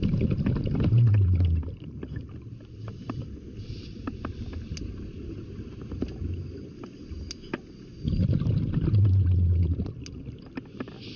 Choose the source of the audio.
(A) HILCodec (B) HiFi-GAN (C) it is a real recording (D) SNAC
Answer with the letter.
C